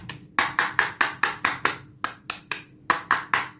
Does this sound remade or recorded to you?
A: recorded